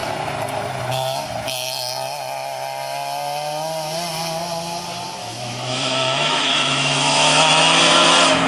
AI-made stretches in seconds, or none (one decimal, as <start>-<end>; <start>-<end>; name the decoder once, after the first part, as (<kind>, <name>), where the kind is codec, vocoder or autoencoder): 5.2-7.8 (autoencoder, DAC-VAE)